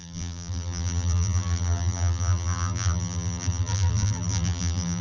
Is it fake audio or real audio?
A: fake